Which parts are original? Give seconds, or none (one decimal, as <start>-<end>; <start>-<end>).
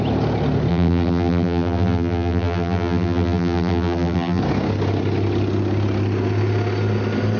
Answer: 0.0-0.7; 4.4-7.4